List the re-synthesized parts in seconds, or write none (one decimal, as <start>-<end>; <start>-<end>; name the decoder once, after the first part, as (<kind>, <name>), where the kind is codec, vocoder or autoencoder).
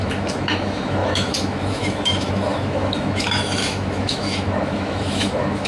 0.0-5.7 (autoencoder, DAC-VAE)